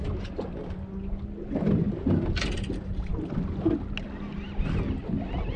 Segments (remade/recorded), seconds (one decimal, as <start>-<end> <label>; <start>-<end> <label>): 0.0-5.6 recorded